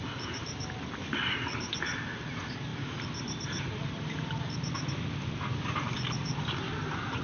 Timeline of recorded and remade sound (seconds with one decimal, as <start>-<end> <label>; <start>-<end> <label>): 0.0-2.7 recorded; 2.7-6.4 remade; 6.4-7.2 recorded